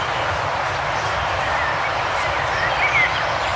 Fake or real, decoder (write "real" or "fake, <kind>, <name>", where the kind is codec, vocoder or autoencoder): real